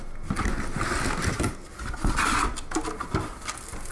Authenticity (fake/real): real